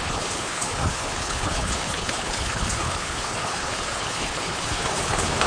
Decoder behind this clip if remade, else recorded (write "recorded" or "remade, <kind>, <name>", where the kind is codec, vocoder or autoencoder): remade, codec, HILCodec